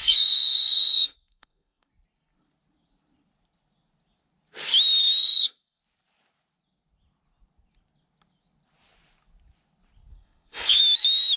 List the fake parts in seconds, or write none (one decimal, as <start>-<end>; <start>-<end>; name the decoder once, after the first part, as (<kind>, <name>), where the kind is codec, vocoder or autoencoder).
0.0-1.9 (codec, SNAC); 5.2-5.8; 10.1-10.8